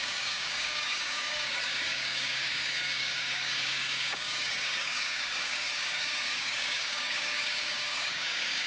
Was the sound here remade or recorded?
remade